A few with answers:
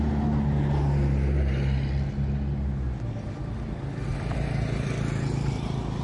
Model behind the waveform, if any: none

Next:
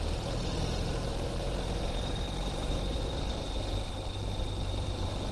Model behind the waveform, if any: vocoder, BigVGAN v2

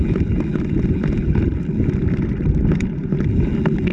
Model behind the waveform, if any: none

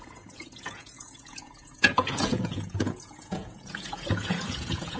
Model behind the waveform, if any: vocoder, Vocos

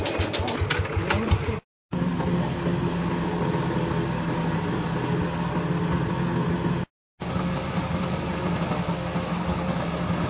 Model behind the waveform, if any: none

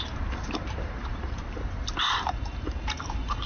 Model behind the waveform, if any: vocoder, BigVGAN v2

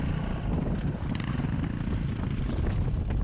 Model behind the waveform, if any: none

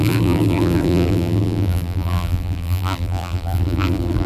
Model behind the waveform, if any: vocoder, BigVGAN v2